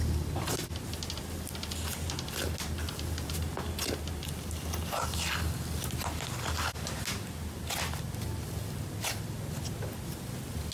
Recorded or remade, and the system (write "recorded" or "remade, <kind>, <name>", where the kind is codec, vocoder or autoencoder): recorded